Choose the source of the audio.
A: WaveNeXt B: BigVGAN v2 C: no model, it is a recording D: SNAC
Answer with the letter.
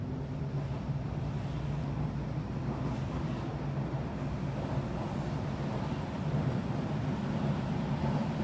C